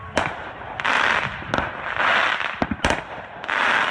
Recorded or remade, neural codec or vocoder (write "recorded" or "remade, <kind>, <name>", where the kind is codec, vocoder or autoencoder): recorded